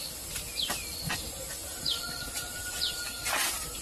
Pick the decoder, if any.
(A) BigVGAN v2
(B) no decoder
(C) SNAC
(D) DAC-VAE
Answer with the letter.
B